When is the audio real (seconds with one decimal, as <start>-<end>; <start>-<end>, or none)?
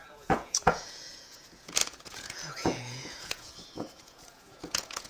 none